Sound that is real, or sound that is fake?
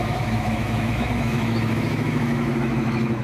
fake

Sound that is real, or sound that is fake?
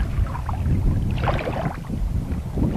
real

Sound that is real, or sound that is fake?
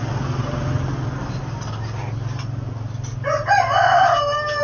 real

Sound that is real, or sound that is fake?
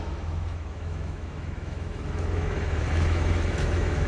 fake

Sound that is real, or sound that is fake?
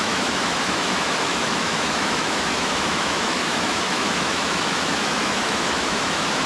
fake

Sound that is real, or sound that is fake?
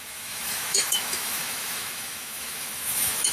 fake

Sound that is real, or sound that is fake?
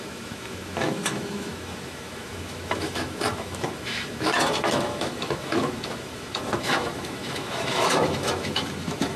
fake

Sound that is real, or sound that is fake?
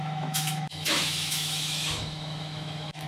fake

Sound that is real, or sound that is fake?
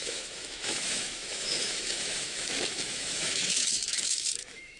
fake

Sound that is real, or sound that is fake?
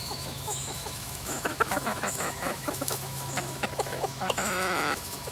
fake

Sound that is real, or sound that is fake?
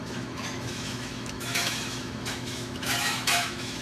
fake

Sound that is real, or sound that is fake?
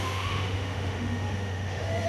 fake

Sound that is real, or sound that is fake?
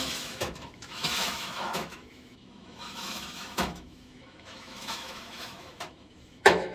fake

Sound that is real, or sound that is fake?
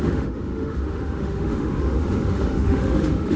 fake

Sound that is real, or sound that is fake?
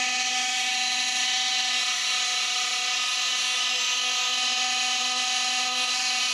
fake